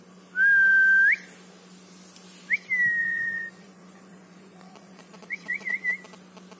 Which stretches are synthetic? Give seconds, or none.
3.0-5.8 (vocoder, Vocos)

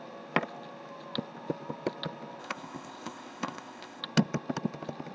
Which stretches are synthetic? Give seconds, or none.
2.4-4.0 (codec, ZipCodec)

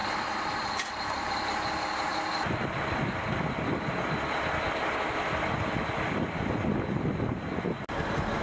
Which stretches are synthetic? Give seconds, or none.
0.0-1.3 (vocoder, BigVGAN v2)